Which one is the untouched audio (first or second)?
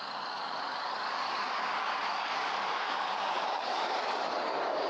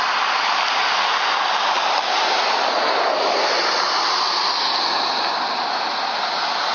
second